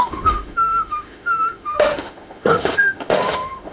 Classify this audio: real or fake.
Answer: fake